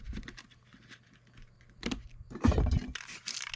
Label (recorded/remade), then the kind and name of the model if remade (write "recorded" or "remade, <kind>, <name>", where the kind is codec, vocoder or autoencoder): recorded